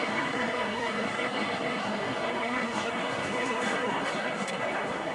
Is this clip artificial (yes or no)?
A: yes